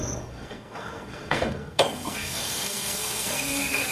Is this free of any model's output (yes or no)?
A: no